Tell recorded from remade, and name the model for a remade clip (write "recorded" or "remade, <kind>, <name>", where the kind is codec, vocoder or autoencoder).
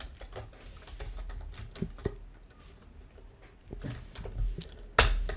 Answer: recorded